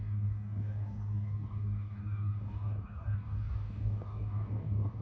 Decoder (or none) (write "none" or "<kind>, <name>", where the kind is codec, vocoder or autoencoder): codec, DAC